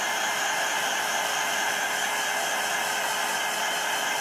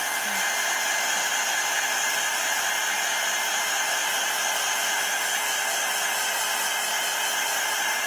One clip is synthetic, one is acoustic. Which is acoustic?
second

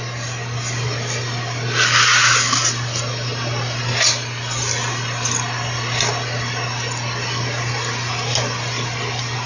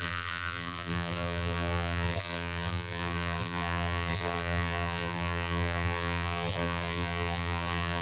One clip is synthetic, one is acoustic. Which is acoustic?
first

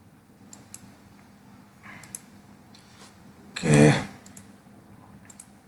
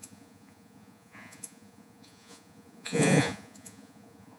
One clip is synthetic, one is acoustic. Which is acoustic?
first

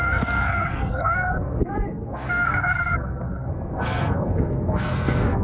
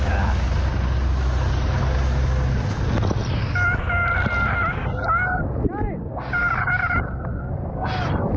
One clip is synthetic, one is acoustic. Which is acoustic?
second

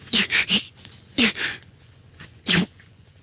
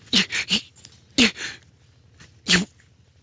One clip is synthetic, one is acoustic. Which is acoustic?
second